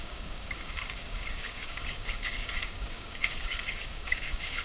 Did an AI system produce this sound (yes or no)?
yes